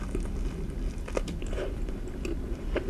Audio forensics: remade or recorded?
recorded